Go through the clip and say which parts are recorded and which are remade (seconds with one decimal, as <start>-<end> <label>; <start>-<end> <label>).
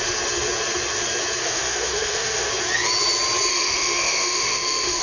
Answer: 0.0-1.4 recorded; 1.4-2.5 remade; 2.5-3.5 recorded; 3.5-5.0 remade